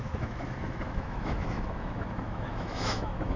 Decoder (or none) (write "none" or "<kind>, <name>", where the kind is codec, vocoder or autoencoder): autoencoder, DAC-VAE